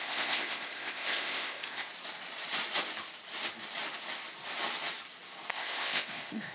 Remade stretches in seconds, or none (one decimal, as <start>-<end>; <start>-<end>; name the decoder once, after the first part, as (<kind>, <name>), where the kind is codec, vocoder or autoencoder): 0.0-1.9 (codec, ZipCodec); 5.5-6.5